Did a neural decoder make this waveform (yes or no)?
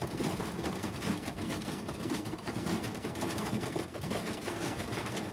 yes